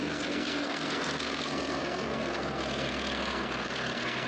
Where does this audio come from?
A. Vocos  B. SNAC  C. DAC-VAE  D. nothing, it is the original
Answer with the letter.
B